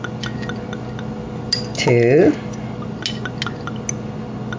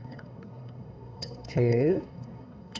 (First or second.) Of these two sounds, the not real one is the second